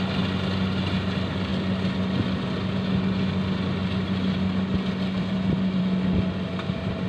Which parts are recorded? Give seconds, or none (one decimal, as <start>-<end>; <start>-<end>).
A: 0.0-7.1